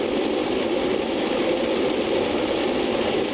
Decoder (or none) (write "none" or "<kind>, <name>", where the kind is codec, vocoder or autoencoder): none